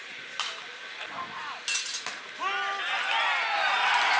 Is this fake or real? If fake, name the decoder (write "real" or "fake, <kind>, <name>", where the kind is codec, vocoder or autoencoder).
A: real